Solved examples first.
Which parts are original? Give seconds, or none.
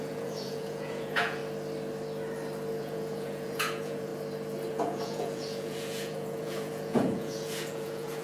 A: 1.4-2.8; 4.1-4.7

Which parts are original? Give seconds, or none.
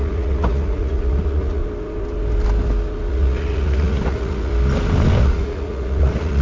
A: 1.6-3.1; 4.5-5.2